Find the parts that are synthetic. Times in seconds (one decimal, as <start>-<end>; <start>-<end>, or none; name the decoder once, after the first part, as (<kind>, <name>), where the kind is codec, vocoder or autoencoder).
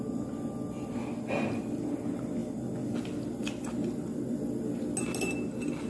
none